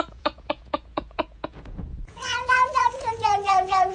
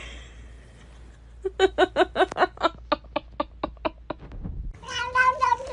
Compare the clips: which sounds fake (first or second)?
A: first